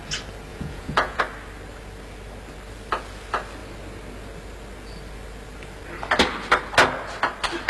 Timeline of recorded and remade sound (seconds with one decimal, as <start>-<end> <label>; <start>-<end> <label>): 0.0-0.5 recorded; 0.5-1.2 remade; 1.2-7.7 recorded